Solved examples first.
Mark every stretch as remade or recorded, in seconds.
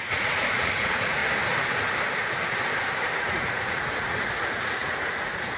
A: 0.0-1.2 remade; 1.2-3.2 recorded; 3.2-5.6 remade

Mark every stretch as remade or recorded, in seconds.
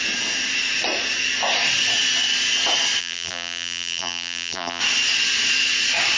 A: 0.0-3.0 recorded; 3.0-4.8 remade; 4.8-6.2 recorded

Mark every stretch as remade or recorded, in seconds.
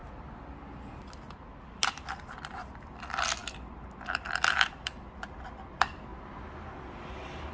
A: 0.0-7.5 recorded